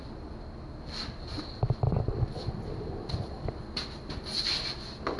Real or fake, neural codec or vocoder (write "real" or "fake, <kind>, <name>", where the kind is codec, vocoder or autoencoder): real